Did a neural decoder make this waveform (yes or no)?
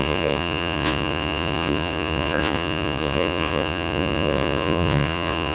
yes